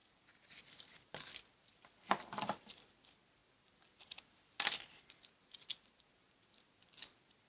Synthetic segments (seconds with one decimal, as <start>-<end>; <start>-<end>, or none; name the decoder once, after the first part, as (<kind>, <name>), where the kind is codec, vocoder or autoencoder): 0.0-0.6 (vocoder, BigVGAN v2)